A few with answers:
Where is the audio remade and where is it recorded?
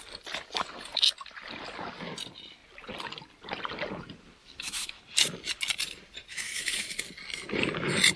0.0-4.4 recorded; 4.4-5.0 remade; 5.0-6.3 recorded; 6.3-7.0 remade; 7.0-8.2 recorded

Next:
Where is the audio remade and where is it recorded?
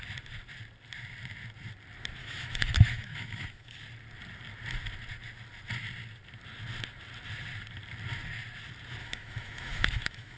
0.0-2.2 recorded; 2.2-3.8 remade; 3.8-9.0 recorded; 9.0-10.4 remade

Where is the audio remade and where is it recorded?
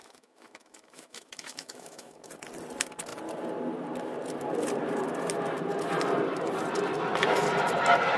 0.0-2.3 remade; 2.3-8.2 recorded